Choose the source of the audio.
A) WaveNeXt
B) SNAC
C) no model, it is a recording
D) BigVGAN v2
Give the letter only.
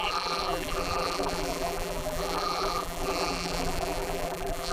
D